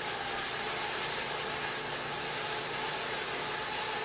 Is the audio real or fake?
real